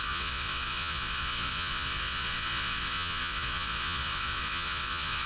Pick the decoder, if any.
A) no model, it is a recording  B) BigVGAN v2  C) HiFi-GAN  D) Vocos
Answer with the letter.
D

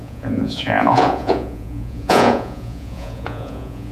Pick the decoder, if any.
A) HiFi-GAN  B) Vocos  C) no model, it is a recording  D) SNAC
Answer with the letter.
B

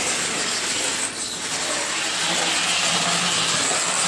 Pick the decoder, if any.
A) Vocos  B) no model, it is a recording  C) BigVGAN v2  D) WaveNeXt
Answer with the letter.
B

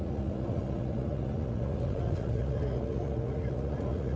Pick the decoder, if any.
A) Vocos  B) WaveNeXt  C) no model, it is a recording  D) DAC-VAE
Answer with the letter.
A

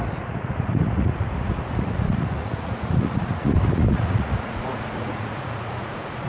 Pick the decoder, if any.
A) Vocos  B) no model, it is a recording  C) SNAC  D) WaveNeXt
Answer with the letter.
A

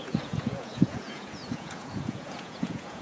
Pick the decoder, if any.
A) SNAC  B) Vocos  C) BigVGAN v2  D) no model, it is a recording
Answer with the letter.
B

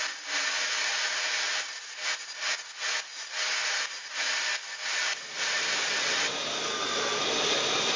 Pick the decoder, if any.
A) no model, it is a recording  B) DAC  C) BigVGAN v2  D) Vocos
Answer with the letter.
A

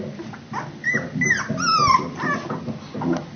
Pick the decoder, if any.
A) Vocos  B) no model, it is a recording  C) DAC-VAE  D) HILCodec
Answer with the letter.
B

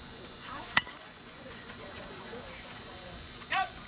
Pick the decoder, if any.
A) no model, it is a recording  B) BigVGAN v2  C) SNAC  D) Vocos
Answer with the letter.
D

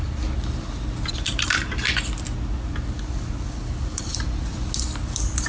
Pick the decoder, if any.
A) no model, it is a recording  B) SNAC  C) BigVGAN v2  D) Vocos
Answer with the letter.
A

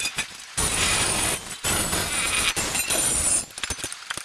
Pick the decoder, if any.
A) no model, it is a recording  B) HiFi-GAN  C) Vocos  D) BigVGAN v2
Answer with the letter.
A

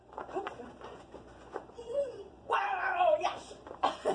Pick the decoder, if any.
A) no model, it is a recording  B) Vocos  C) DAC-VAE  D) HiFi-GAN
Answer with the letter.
B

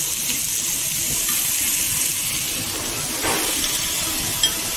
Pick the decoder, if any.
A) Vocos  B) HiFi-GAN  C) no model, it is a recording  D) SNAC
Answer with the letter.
C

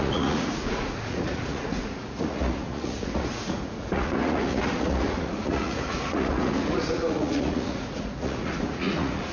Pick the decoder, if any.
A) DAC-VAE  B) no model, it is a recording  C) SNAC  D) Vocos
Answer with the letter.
D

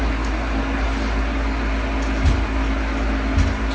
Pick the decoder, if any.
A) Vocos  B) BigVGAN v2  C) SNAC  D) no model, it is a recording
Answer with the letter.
D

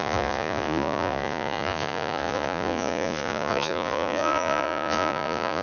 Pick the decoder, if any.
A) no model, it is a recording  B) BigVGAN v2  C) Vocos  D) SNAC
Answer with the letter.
C